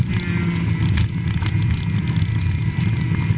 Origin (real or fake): real